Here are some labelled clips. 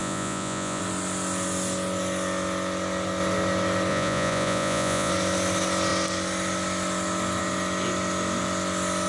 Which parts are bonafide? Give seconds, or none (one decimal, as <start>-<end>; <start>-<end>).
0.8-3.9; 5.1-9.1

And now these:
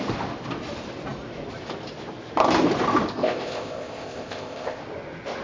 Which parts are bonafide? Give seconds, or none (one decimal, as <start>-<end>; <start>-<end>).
0.0-3.1; 4.8-5.4

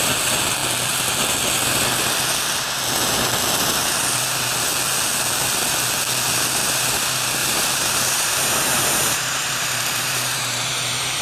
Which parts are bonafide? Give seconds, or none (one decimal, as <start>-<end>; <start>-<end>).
0.0-7.4; 10.7-11.2

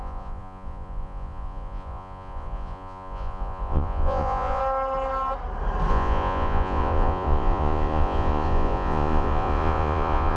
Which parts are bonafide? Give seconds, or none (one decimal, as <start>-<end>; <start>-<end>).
4.6-5.9

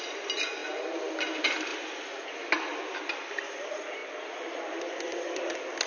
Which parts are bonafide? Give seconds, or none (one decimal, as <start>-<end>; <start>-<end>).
0.0-5.9

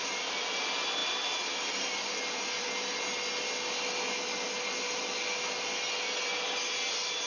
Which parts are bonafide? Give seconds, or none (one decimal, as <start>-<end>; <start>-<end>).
0.0-7.3

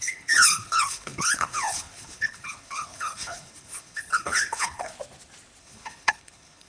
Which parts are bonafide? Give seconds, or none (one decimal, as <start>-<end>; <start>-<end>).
4.9-5.6